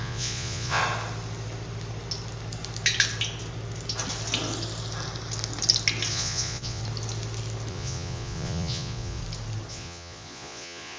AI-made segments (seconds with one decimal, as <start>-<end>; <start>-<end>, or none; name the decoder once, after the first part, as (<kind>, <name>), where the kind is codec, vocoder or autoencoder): 0.0-0.8 (vocoder, Vocos); 6.1-6.8; 7.7-9.2; 9.7-11.0